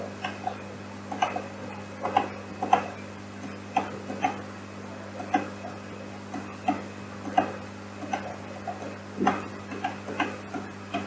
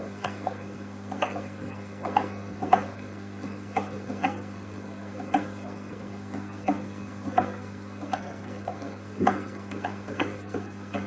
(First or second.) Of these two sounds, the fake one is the second